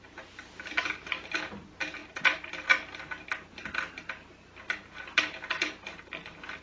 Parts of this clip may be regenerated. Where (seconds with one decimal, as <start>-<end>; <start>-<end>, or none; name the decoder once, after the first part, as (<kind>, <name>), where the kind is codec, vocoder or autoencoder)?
none